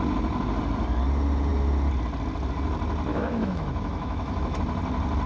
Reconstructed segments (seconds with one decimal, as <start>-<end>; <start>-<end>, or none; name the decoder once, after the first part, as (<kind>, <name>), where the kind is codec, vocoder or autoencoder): 3.1-4.6 (autoencoder, DAC-VAE)